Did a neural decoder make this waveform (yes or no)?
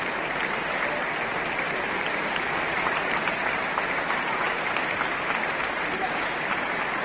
yes